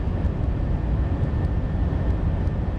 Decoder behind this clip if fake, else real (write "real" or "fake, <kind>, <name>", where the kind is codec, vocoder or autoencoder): real